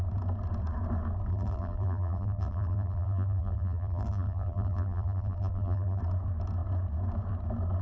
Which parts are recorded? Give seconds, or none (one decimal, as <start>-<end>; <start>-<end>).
0.0-1.3; 6.0-7.8